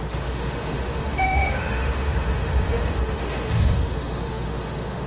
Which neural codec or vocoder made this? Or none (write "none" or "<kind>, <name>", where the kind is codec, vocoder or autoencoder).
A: autoencoder, DAC-VAE